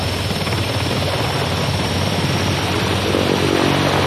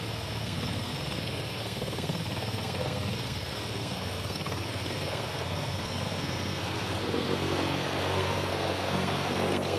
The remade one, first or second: second